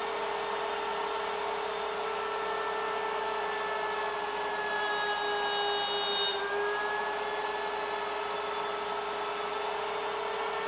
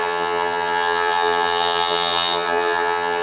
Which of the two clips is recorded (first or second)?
first